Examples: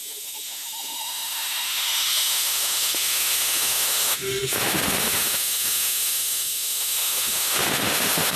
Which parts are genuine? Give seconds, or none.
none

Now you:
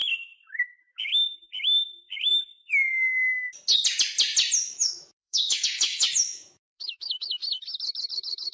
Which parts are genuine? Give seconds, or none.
2.3-4.6; 7.4-8.1

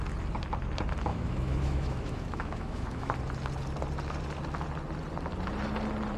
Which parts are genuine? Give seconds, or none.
0.0-1.1; 3.1-6.2

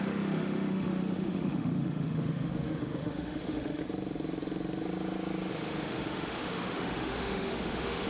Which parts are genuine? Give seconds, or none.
3.8-5.5

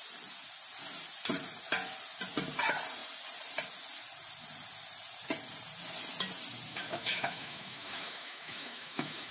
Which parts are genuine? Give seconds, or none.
0.0-6.7

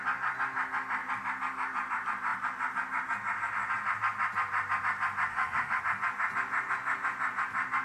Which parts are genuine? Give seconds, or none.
0.0-5.3; 5.8-7.8

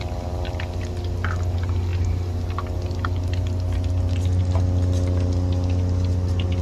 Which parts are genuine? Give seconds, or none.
0.0-6.6

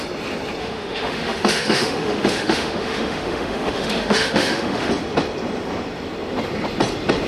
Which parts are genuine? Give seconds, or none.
0.0-0.6; 4.9-7.3